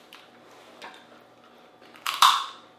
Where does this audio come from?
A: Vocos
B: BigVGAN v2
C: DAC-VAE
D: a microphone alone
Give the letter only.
D